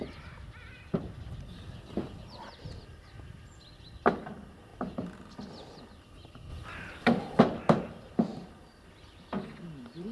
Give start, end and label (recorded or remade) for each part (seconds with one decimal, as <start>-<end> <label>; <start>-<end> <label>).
0.0-6.5 recorded; 6.5-7.4 remade; 7.4-10.1 recorded